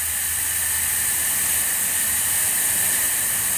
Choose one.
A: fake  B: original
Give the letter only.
B